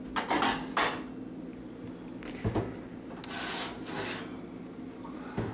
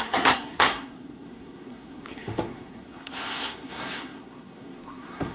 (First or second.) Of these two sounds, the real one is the first